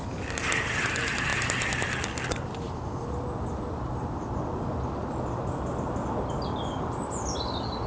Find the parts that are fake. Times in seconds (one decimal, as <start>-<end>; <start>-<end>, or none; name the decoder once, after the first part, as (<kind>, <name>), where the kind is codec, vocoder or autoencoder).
none